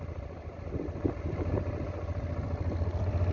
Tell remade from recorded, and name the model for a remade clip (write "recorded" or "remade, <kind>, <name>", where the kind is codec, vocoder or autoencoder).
remade, vocoder, BigVGAN v2